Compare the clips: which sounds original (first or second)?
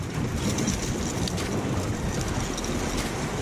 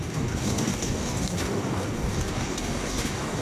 first